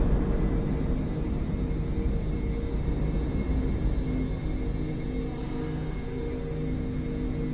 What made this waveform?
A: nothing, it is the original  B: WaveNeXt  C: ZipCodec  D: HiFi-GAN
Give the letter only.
A